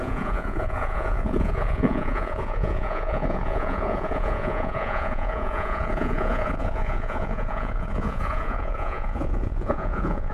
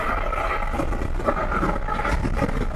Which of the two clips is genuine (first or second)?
second